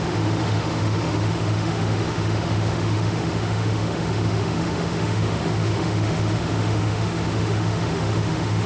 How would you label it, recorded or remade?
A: remade